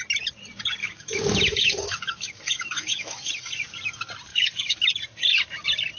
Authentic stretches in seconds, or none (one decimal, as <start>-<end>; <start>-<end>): 0.0-0.8; 3.3-4.3; 4.9-6.0